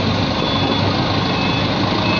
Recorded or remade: recorded